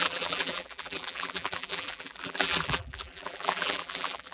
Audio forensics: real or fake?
fake